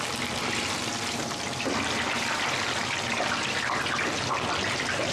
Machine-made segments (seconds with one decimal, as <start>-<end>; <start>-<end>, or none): none